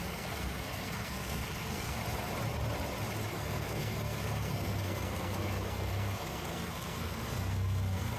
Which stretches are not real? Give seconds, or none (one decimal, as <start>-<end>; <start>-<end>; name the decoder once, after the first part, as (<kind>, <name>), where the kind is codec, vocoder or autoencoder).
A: 0.0-2.0 (codec, SNAC); 3.3-8.2